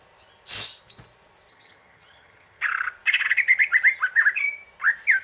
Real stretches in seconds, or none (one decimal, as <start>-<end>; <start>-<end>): 0.0-1.5; 2.6-5.2